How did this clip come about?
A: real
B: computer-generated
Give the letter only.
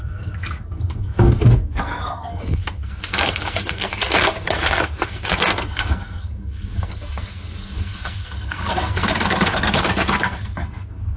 B